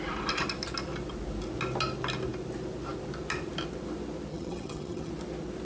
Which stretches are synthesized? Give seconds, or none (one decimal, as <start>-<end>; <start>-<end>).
4.3-5.1